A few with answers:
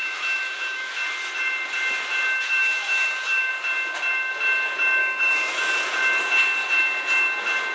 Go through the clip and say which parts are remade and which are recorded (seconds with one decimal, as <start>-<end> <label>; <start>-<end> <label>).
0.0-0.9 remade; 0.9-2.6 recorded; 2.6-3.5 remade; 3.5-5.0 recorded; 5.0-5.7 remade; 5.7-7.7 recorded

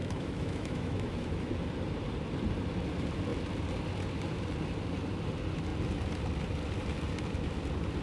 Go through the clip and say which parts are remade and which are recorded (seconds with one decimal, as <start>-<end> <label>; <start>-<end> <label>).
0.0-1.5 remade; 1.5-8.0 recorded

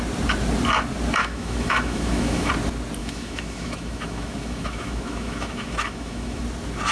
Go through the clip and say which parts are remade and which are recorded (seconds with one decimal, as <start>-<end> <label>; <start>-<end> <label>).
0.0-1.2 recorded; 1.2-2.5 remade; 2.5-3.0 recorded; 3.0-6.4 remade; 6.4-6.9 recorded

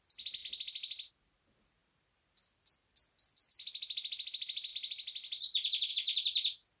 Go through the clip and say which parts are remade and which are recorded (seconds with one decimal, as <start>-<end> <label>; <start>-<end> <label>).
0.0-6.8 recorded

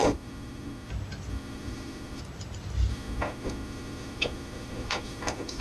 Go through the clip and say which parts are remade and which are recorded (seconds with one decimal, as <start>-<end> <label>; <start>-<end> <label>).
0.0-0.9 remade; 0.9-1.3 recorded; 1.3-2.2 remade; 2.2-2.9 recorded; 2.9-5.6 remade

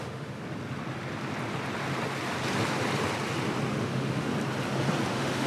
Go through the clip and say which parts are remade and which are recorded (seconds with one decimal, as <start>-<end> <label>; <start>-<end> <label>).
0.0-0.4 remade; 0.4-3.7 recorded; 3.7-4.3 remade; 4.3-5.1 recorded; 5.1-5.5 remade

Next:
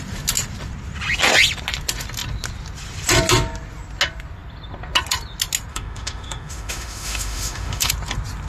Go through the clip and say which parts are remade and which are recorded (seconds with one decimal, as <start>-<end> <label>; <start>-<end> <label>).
0.0-5.7 recorded; 5.7-7.9 remade; 7.9-8.5 recorded